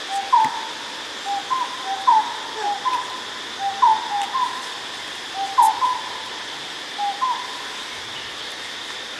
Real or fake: real